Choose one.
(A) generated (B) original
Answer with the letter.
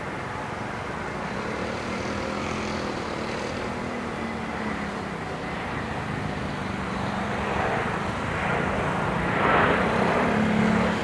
B